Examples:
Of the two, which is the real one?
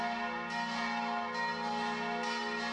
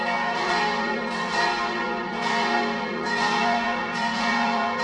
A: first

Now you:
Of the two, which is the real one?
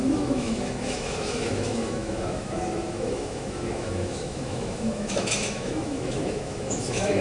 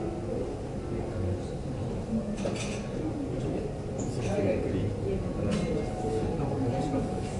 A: second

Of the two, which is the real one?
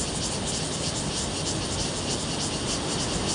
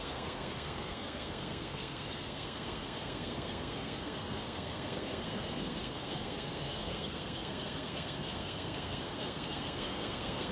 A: first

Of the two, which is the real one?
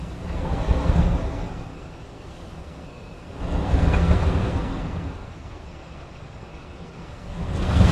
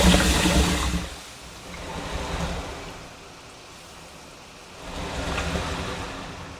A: second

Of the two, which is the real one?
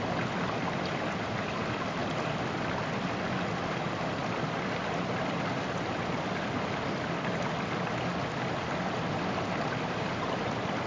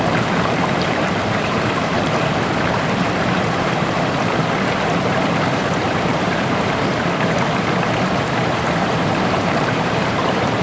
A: first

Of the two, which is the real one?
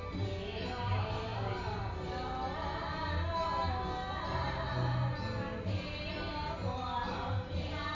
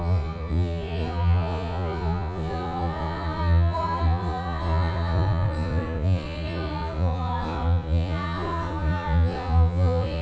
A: first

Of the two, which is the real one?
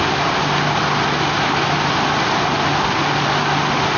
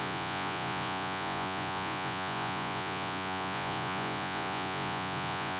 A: first